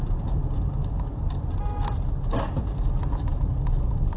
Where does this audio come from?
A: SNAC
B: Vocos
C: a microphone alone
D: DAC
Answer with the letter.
C